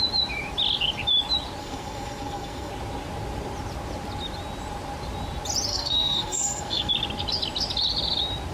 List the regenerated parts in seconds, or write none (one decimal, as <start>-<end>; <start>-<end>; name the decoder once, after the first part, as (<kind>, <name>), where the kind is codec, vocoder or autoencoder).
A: 1.6-2.7 (codec, SNAC); 5.7-6.9